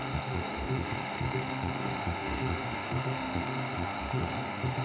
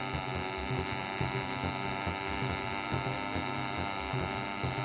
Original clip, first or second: second